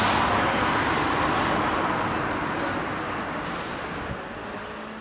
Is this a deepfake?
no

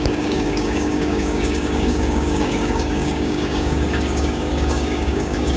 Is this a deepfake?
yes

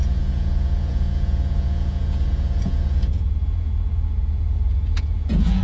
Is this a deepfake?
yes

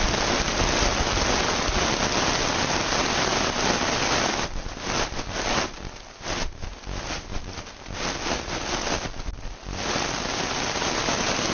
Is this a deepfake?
no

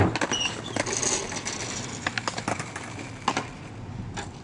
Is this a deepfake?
no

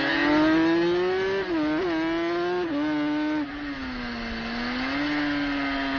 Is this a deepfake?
no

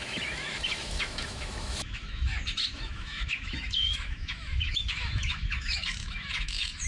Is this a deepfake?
yes